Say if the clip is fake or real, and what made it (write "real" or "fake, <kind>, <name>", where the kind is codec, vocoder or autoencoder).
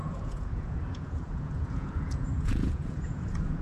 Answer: fake, vocoder, Vocos